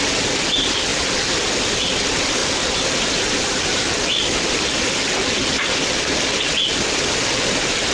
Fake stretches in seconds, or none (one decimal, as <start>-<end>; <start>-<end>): none